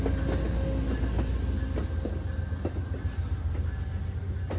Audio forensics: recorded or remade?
recorded